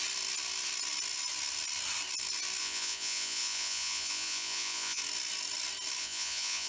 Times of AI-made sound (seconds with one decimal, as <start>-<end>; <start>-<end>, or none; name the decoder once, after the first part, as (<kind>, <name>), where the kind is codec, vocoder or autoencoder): 2.6-5.0 (vocoder, Vocos); 6.0-6.7